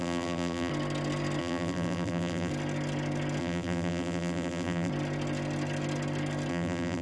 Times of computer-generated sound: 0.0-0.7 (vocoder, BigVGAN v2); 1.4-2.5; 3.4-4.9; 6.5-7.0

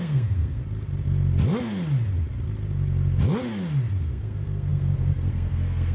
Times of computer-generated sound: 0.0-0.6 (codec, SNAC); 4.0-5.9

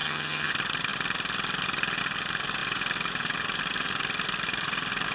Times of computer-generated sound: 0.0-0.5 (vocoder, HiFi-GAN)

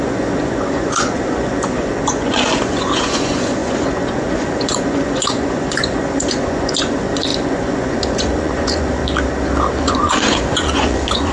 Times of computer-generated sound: 0.0-9.0 (vocoder, Vocos); 9.8-11.3

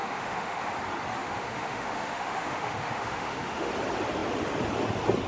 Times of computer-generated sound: 0.0-0.7 (autoencoder, DAC-VAE); 1.2-3.7

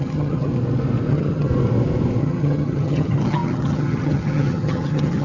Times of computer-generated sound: 0.0-0.5 (vocoder, HiFi-GAN); 1.1-1.5; 2.2-5.2